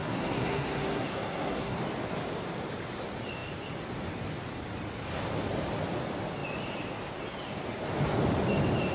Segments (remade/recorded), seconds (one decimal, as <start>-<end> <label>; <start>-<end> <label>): 0.0-1.8 remade; 1.8-8.9 recorded

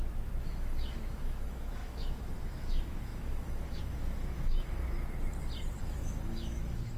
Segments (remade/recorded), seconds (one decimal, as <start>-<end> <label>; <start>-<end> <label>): 0.0-4.8 remade; 4.8-5.8 recorded; 5.8-7.0 remade

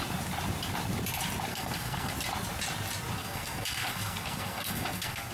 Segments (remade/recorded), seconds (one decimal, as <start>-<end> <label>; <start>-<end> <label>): 0.0-1.5 recorded; 1.5-2.1 remade; 2.1-3.2 recorded; 3.2-5.3 remade

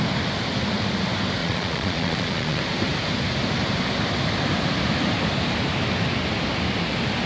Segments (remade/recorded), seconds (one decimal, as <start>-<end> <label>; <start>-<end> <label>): 0.0-1.4 recorded; 1.4-2.6 remade; 2.6-7.3 recorded

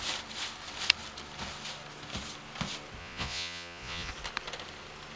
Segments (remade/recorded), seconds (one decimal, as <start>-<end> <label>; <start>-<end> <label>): 0.0-3.0 recorded; 3.0-4.1 remade; 4.1-5.2 recorded

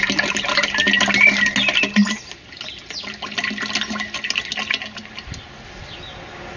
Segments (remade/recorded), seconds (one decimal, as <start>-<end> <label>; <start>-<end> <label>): 0.0-6.6 recorded